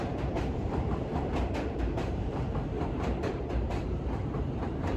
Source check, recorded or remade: remade